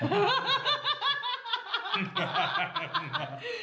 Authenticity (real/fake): real